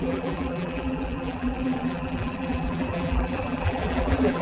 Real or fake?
fake